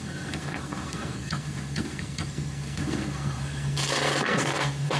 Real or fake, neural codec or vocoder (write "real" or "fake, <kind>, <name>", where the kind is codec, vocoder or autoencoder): fake, codec, SNAC